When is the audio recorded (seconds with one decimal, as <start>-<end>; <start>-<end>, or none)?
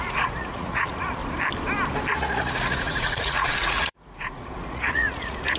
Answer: 1.2-2.1